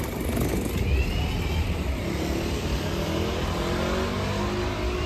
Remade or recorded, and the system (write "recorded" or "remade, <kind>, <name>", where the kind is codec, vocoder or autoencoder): recorded